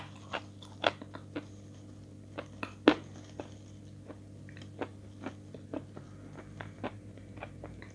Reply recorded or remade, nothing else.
recorded